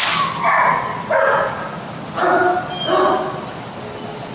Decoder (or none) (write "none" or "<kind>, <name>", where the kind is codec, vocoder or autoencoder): none